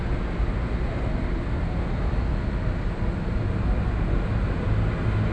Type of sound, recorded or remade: recorded